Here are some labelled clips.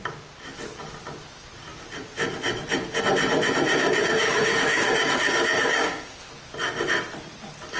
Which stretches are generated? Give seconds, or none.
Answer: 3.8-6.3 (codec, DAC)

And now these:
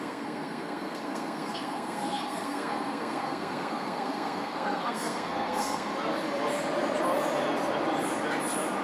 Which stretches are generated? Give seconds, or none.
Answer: 0.0-5.9 (codec, SNAC)

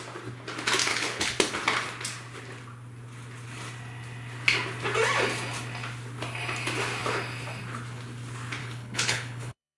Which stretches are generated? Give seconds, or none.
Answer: 0.9-1.5 (codec, HILCodec); 8.6-9.8

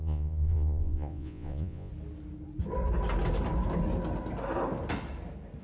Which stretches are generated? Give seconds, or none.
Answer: 0.0-1.9 (vocoder, Vocos)

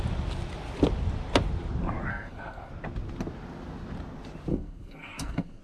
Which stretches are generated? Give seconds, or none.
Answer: 2.1-2.7 (codec, SNAC); 4.5-5.6